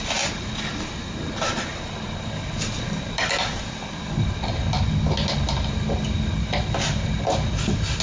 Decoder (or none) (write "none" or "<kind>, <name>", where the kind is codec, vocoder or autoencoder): none